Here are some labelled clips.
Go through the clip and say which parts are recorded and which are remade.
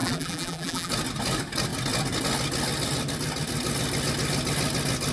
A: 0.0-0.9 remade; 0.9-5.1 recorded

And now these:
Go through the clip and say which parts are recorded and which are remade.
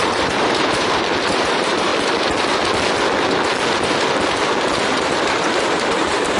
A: 0.0-1.9 remade; 1.9-4.9 recorded; 4.9-6.4 remade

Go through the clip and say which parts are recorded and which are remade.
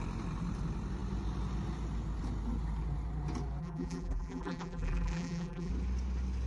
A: 0.0-3.6 recorded; 3.6-5.7 remade; 5.7-6.5 recorded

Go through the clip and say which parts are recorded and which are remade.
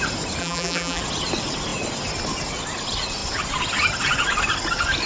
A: 0.0-0.4 recorded; 0.4-1.0 remade; 1.0-5.1 recorded